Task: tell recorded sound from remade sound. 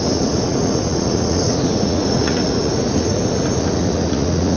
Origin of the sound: remade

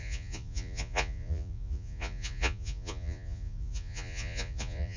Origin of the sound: remade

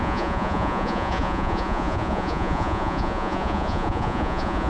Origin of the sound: remade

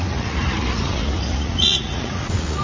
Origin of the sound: remade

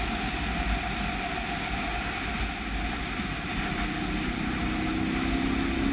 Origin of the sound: recorded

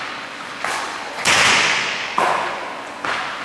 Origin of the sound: remade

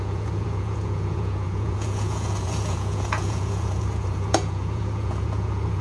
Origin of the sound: remade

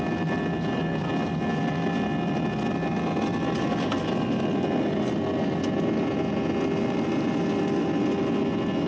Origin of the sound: recorded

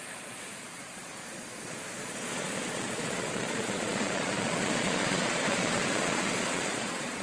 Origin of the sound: remade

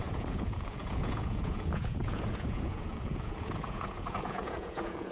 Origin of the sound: remade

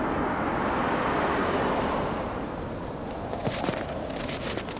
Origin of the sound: recorded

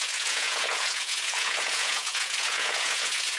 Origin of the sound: remade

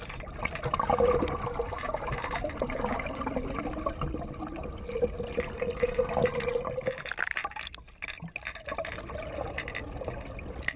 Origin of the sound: recorded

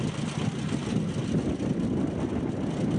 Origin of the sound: recorded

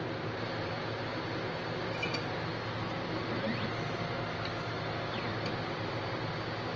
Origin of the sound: recorded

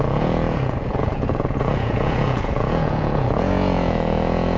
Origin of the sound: remade